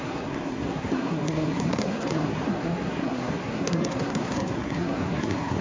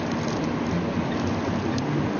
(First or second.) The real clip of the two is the second